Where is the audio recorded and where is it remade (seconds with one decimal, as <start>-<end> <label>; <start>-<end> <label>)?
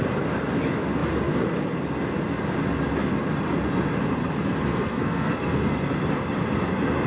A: 0.0-4.7 recorded; 4.7-5.7 remade; 5.7-7.1 recorded